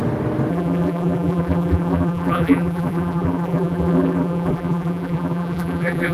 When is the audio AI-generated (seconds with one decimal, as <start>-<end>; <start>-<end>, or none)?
0.5-6.1